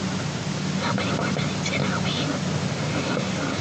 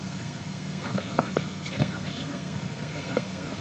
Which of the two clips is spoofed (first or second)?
second